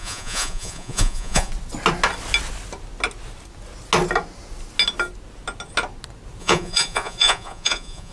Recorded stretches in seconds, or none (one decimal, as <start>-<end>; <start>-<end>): 1.5-6.4